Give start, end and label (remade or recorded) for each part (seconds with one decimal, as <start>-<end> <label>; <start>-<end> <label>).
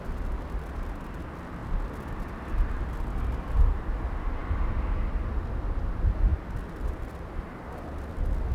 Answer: 0.0-8.5 recorded